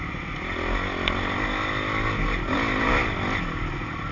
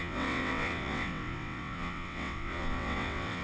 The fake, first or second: second